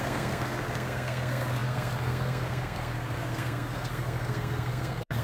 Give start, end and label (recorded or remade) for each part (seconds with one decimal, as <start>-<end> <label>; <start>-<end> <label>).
0.0-5.2 remade